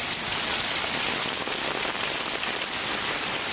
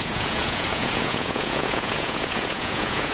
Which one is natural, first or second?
first